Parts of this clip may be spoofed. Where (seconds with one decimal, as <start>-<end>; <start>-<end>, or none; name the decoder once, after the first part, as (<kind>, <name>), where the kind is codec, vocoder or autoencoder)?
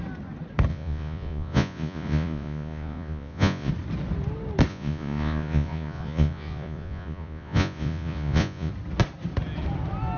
0.7-3.7 (vocoder, Vocos); 4.7-8.7